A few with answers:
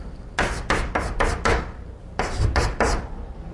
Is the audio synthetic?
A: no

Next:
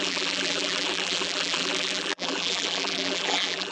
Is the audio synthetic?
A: yes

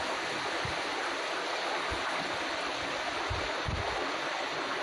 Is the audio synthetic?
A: no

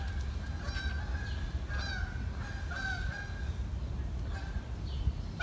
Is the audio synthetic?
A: no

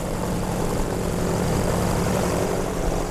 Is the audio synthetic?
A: yes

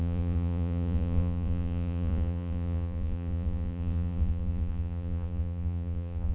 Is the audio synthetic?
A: yes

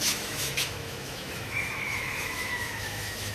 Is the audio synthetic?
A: yes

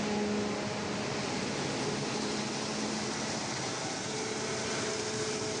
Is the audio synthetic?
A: no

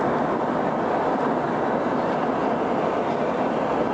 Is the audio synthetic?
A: no